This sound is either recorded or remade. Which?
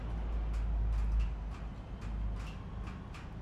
recorded